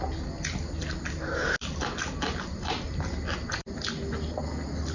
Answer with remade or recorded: recorded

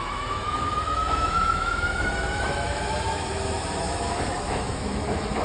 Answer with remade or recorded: remade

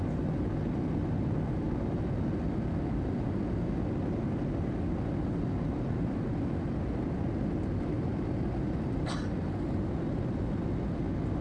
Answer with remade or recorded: recorded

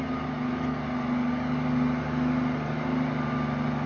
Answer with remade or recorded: recorded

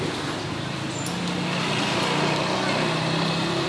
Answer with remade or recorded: recorded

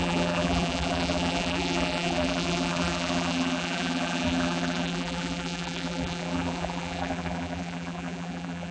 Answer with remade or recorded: remade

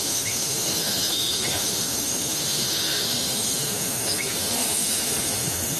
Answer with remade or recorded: remade